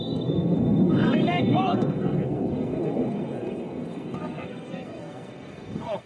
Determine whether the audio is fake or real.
fake